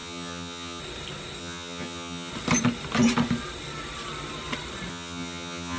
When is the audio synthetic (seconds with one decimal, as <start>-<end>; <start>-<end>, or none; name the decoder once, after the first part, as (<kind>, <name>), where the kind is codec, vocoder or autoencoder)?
0.0-0.8 (vocoder, HiFi-GAN); 1.4-2.3; 4.9-5.8